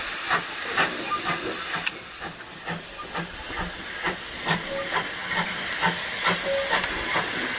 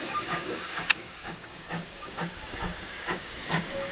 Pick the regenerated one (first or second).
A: second